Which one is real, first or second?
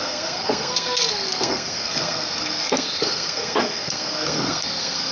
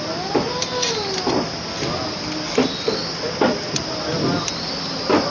second